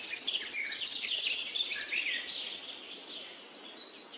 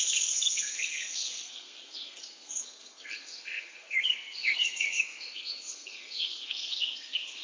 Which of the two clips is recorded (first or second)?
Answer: first